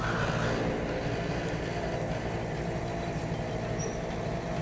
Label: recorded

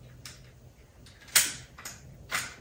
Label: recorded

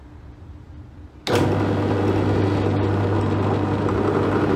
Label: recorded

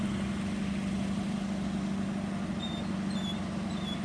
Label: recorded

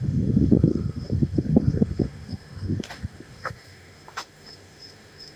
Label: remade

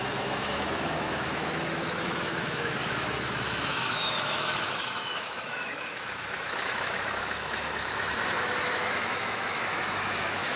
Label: remade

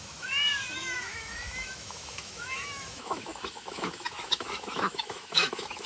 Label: remade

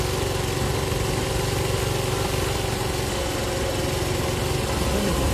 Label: recorded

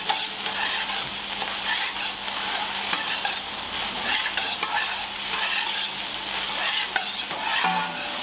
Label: recorded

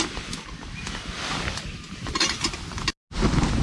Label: recorded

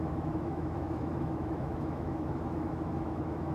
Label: remade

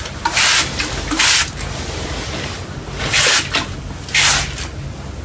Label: recorded